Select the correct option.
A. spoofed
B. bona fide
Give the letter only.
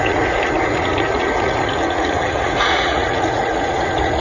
A